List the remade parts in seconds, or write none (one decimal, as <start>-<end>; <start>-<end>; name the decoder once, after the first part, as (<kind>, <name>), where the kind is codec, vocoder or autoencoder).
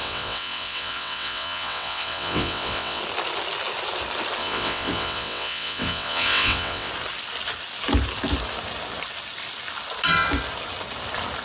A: 0.0-3.0 (vocoder, WaveNeXt); 4.4-6.9